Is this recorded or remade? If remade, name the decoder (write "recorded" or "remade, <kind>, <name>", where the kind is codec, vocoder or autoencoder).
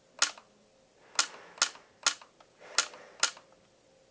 recorded